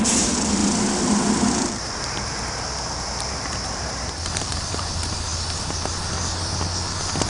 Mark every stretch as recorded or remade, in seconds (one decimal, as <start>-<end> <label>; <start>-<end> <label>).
0.0-0.6 remade; 0.6-1.5 recorded; 1.5-5.3 remade; 5.3-7.3 recorded